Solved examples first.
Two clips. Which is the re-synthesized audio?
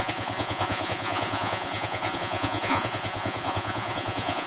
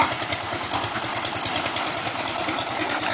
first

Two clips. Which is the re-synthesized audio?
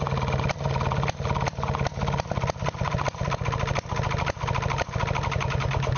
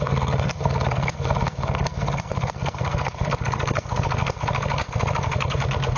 second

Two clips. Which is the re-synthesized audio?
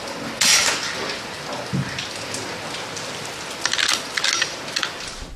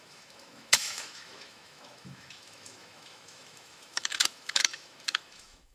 second